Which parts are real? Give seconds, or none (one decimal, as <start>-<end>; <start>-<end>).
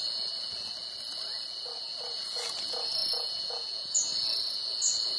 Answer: 0.0-3.0; 4.0-5.2